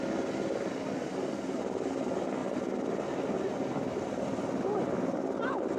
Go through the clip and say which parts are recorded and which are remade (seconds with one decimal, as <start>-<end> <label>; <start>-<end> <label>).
0.0-5.8 recorded